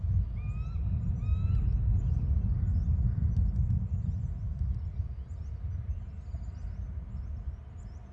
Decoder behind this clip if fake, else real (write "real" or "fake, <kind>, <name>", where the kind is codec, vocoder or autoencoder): real